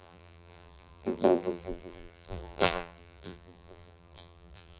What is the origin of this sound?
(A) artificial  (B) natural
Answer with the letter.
A